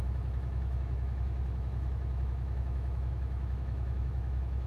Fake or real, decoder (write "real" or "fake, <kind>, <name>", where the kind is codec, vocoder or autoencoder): fake, autoencoder, DAC-VAE